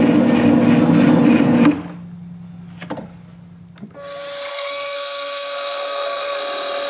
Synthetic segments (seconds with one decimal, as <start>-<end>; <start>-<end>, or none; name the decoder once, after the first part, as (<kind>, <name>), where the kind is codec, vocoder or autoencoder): 4.5-6.4 (codec, SNAC)